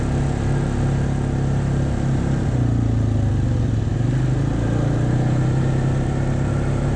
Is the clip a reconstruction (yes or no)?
no